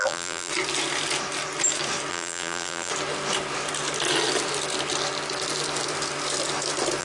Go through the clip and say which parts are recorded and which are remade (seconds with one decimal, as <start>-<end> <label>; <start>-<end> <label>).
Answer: 0.0-0.5 remade; 0.5-2.1 recorded; 2.1-2.9 remade; 2.9-7.0 recorded